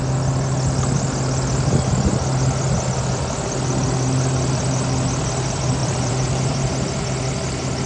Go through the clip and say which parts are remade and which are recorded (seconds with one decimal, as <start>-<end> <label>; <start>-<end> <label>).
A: 0.0-5.8 recorded; 5.8-6.7 remade; 6.7-7.9 recorded